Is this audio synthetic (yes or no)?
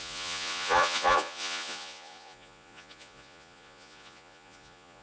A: yes